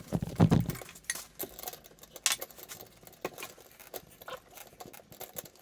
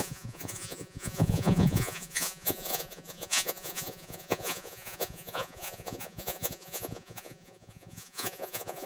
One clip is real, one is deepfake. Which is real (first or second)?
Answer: first